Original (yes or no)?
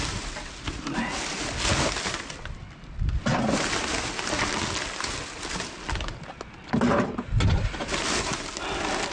yes